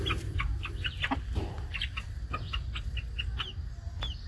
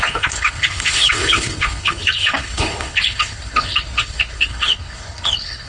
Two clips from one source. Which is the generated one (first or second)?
second